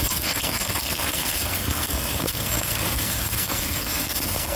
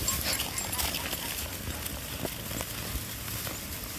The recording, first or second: second